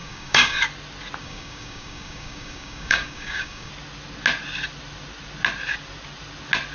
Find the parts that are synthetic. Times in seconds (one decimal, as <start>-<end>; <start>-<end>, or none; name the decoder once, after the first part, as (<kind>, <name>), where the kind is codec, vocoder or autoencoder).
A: 0.0-0.6 (codec, DAC); 1.2-3.7